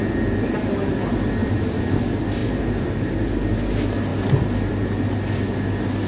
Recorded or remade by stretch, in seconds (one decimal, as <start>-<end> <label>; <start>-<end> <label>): 0.0-1.4 recorded; 1.4-2.0 remade; 2.0-2.4 recorded; 2.4-3.1 remade; 3.1-6.1 recorded